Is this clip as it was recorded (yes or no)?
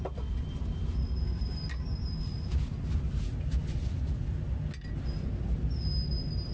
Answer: yes